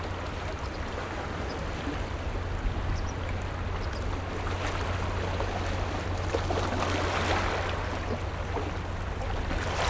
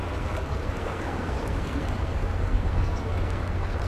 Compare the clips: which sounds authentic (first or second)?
first